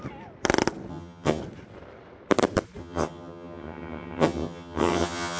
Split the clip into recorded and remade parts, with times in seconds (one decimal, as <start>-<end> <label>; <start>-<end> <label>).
0.0-0.9 recorded; 0.9-1.4 remade; 1.4-2.8 recorded; 2.8-5.4 remade